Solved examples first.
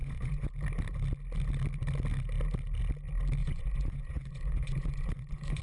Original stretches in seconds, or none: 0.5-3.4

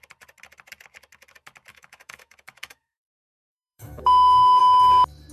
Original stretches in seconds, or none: 0.0-1.7; 4.6-5.3

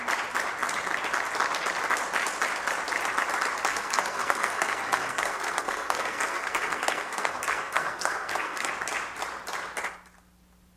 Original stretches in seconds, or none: 0.0-3.7; 8.7-10.8